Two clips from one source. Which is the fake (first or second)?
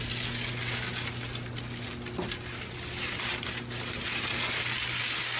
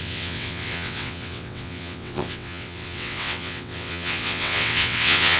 second